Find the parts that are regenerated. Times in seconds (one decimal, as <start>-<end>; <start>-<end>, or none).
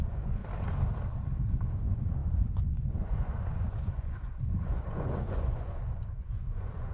0.0-0.4; 1.5-6.9